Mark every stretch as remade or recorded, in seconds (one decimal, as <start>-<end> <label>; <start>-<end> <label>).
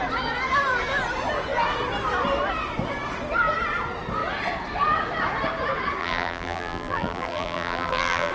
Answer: 0.0-6.0 recorded; 6.0-8.3 remade